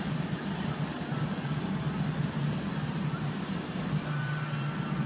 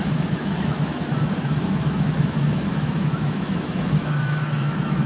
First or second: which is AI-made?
second